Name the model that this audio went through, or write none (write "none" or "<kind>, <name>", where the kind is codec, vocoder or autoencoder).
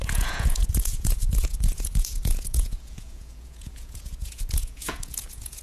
vocoder, Vocos